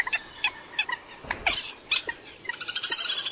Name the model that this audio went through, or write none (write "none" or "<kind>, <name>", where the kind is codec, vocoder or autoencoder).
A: none